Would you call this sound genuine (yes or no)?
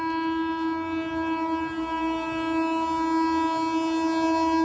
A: yes